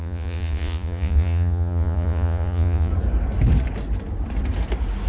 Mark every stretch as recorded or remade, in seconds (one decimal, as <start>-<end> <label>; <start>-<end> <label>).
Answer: 0.0-2.9 remade; 2.9-5.1 recorded